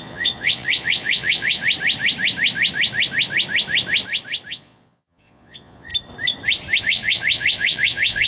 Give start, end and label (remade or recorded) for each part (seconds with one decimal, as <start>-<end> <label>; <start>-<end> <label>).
0.0-1.6 remade; 1.6-4.5 recorded; 4.5-5.9 remade; 5.9-6.8 recorded; 6.8-8.3 remade

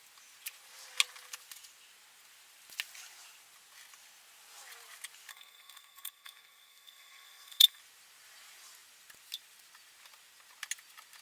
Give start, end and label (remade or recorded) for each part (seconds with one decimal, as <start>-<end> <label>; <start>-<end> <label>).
0.0-5.3 recorded; 5.3-7.8 remade; 7.8-11.2 recorded

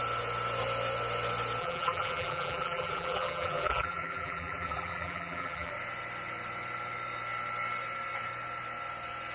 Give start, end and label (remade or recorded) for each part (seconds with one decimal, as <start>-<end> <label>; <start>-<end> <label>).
0.0-1.6 recorded; 1.6-5.7 remade; 5.7-9.3 recorded

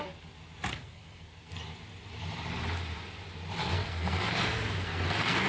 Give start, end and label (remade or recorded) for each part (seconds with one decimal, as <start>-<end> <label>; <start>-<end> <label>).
0.0-0.7 recorded; 0.7-1.5 remade; 1.5-3.6 recorded; 3.6-5.5 remade

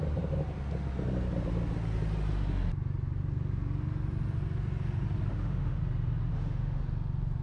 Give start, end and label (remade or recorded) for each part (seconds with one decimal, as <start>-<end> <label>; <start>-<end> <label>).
0.0-5.3 recorded; 5.3-5.8 remade; 5.8-6.3 recorded; 6.3-6.8 remade; 6.8-7.4 recorded

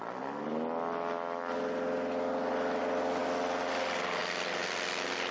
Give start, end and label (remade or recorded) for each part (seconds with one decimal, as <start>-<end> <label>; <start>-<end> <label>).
0.0-5.3 recorded

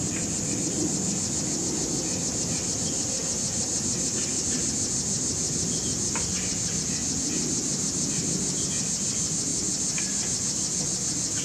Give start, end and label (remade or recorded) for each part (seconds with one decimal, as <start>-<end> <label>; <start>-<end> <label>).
0.0-11.4 recorded